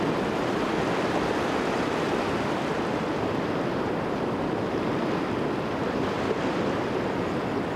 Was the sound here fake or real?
real